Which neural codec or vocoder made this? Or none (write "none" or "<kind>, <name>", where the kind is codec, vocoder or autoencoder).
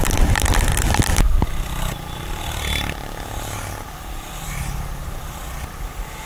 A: vocoder, BigVGAN v2